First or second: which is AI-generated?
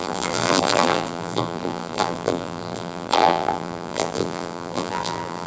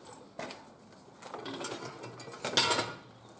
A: first